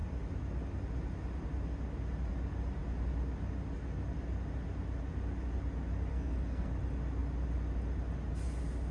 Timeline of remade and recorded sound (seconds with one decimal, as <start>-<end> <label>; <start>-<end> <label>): 0.0-6.1 recorded; 6.1-6.7 remade; 6.7-8.9 recorded